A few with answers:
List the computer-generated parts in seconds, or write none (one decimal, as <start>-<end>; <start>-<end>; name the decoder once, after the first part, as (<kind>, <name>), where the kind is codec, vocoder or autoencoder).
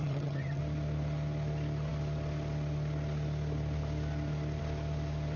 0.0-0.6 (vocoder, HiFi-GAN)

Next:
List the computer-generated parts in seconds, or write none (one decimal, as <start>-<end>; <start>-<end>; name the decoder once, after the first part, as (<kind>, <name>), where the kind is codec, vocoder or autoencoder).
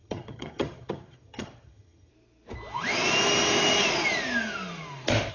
0.0-2.1 (vocoder, HiFi-GAN)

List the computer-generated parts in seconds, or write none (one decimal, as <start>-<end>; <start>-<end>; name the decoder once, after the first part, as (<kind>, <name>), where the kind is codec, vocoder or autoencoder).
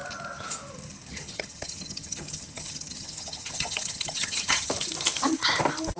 1.1-4.7 (vocoder, HiFi-GAN)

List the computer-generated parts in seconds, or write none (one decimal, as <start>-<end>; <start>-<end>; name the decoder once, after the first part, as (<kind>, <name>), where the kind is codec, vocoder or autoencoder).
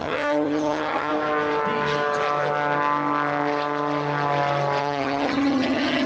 0.0-1.1 (vocoder, HiFi-GAN); 4.8-6.1